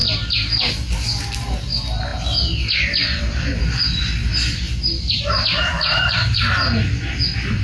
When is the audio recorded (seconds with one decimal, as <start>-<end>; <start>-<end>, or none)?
0.0-5.5; 6.4-7.6